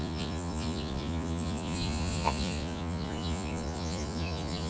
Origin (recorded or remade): remade